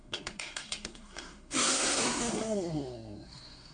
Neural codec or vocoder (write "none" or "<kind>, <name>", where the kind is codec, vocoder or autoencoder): codec, SNAC